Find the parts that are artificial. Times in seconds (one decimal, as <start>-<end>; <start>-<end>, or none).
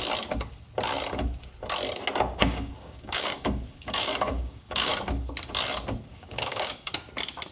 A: 2.4-4.9; 6.1-6.9